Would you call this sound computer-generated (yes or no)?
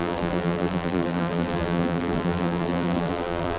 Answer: yes